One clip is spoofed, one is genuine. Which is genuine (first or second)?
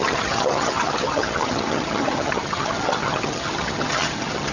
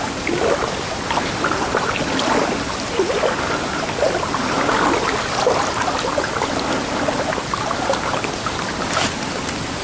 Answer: second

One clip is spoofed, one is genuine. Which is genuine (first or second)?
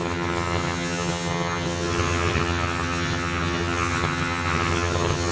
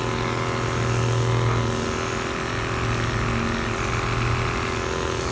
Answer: second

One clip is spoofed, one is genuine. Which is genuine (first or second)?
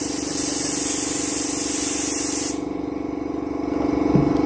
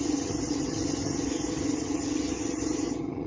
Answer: first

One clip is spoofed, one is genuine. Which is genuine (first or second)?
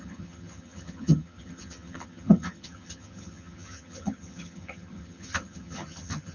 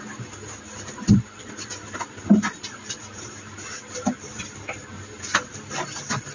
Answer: second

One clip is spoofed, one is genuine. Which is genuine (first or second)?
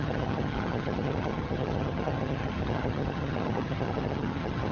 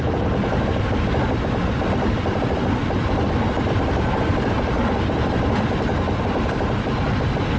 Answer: second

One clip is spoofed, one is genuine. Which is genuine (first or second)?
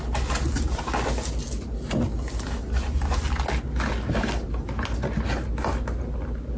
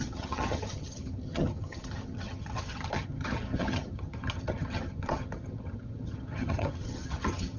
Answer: first